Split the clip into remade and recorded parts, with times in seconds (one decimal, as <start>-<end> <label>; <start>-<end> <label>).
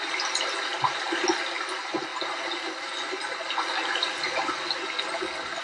0.0-5.6 recorded